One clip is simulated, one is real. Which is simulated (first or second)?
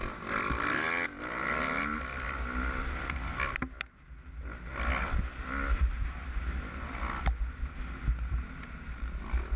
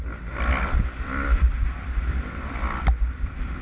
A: second